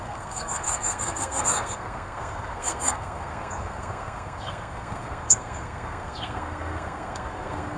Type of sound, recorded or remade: remade